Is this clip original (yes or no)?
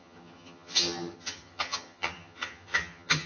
no